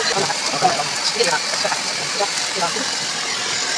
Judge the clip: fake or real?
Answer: fake